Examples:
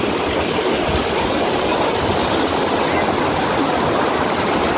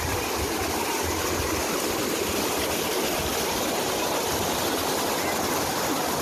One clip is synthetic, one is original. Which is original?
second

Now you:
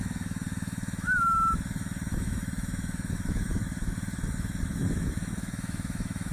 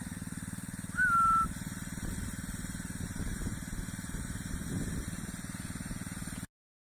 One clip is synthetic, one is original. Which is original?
second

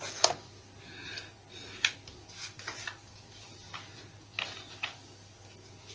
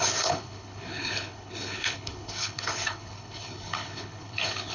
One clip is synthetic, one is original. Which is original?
first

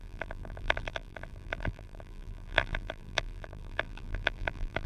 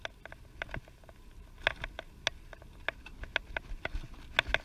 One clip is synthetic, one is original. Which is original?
second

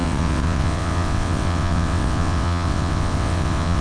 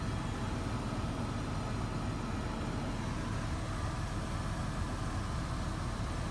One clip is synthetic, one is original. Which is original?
second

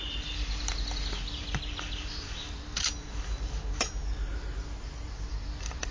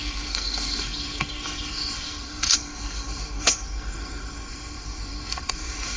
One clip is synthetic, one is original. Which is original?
first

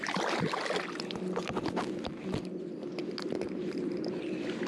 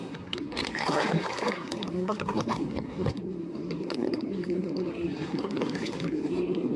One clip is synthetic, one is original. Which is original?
first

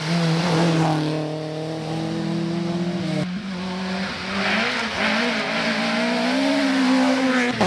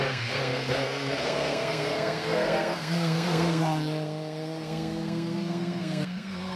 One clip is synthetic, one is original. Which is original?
first